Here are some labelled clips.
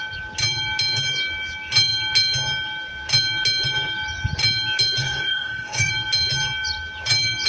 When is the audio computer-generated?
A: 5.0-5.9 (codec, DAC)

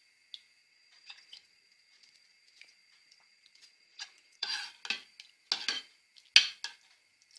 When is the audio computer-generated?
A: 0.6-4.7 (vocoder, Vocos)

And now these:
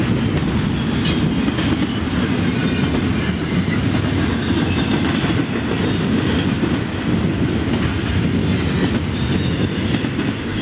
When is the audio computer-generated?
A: none

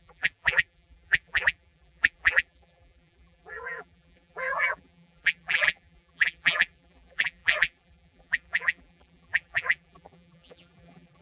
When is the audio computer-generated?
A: 0.0-11.2 (vocoder, BigVGAN v2)

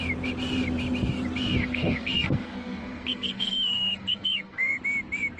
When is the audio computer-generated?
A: 1.6-4.8 (codec, SNAC)

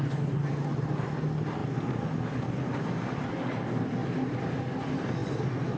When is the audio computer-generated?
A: none

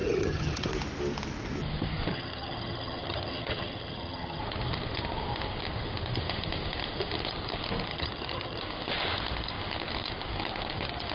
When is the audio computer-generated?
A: 0.0-0.7 (vocoder, HiFi-GAN); 2.1-4.4; 7.9-8.6